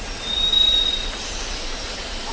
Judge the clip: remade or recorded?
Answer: recorded